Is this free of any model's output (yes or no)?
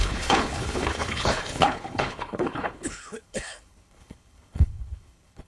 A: no